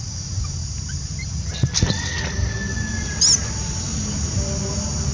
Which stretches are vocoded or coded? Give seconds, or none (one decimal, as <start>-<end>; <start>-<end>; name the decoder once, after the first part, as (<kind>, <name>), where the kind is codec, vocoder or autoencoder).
none